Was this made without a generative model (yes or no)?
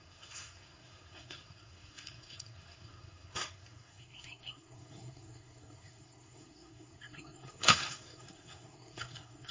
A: no